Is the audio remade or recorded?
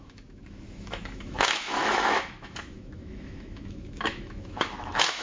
remade